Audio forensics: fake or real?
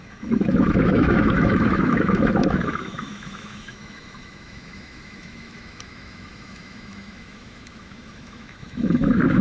fake